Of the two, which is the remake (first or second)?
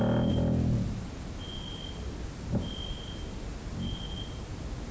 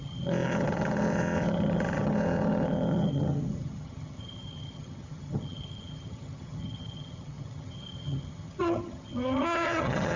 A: second